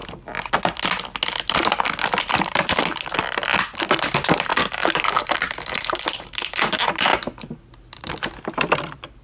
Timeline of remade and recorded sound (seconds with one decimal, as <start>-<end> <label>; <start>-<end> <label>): 0.0-2.2 recorded; 2.2-4.5 remade; 4.5-5.2 recorded; 5.2-7.1 remade; 7.1-8.0 recorded; 8.0-9.2 remade